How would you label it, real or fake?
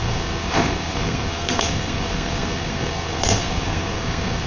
fake